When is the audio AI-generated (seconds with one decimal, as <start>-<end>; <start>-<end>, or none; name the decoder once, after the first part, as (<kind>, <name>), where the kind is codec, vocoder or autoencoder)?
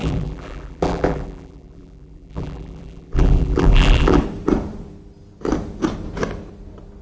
0.0-4.2 (vocoder, BigVGAN v2)